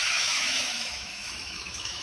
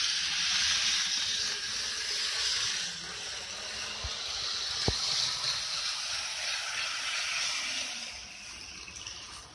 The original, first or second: second